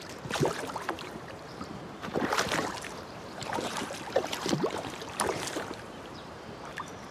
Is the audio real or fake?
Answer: fake